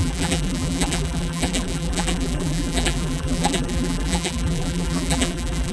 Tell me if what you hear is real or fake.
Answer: fake